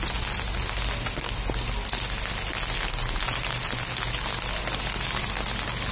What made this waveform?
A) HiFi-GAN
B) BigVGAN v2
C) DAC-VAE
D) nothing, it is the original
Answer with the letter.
D